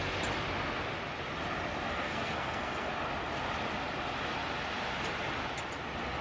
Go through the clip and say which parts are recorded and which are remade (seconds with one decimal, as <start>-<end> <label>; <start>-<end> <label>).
0.0-1.9 recorded; 1.9-2.9 remade; 2.9-6.2 recorded